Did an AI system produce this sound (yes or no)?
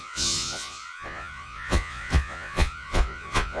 yes